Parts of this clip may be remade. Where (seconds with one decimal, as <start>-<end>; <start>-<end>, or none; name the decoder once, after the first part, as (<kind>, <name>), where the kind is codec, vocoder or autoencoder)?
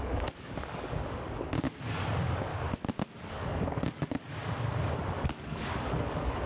0.0-2.5 (codec, DAC); 3.3-6.5